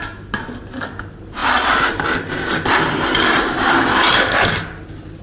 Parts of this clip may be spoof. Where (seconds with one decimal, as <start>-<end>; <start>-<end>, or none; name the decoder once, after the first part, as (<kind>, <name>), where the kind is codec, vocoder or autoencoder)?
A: none